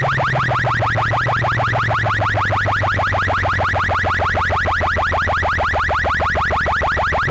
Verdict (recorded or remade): recorded